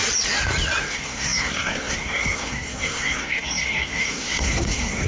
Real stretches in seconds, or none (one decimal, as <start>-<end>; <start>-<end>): 0.0-0.8